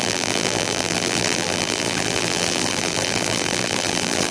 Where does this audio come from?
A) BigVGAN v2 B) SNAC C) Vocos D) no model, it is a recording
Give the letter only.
A